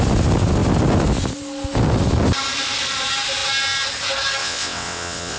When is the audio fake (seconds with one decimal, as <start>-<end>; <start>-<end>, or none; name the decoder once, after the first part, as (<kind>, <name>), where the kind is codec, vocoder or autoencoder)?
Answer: 4.4-5.4 (vocoder, WaveNeXt)